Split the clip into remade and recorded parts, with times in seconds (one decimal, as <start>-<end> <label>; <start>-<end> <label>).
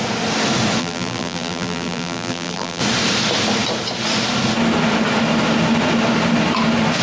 0.0-0.8 recorded; 0.8-2.8 remade; 2.8-7.0 recorded